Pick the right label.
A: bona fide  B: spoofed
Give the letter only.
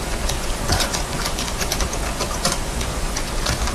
B